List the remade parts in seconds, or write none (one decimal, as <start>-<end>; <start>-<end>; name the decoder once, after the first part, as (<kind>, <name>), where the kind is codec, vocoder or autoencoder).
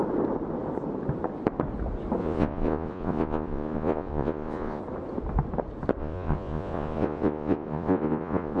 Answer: 2.2-4.8 (vocoder, Vocos); 6.0-8.6